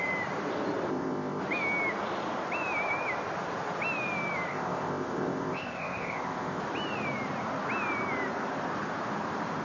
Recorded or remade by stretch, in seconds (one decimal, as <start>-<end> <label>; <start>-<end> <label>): 0.0-0.9 recorded; 0.9-1.4 remade; 1.4-4.5 recorded; 4.5-6.6 remade; 6.6-9.6 recorded